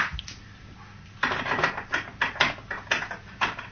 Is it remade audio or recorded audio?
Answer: recorded